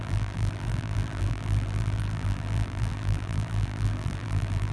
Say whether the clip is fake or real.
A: fake